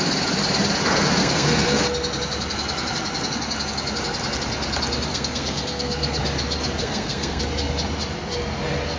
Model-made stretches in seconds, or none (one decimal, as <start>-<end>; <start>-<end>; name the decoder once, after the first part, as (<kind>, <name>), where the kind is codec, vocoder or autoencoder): 1.2-1.8 (codec, SNAC); 5.1-6.2; 6.8-7.4